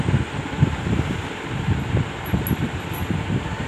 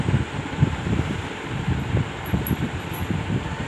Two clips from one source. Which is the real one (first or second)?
first